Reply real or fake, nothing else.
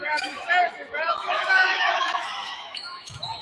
fake